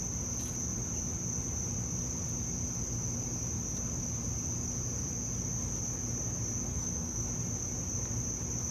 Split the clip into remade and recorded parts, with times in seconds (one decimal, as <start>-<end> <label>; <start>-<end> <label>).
0.0-6.7 recorded; 6.7-7.2 remade; 7.2-8.7 recorded